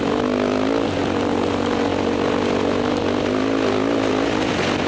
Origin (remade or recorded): recorded